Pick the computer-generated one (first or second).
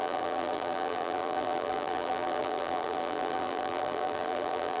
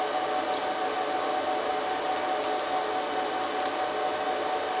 first